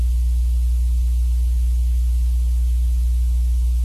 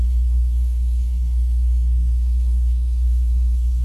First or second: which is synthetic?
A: second